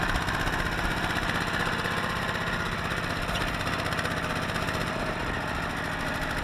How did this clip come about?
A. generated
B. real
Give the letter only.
B